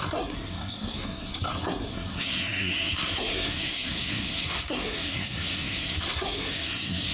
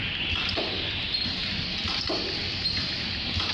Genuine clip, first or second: second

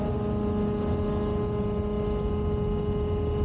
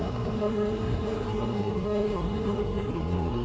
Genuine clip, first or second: first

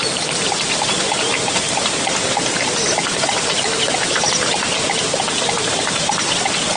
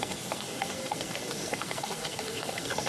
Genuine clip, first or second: first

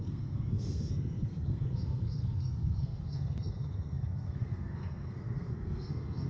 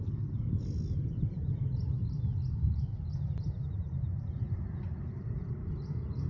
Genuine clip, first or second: second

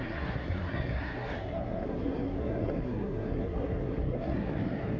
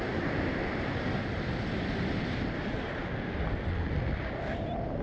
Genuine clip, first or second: second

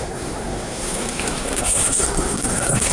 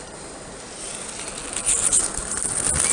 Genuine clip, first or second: second